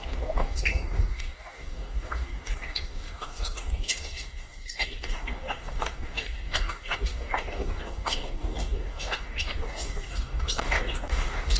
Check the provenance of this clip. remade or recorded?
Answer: remade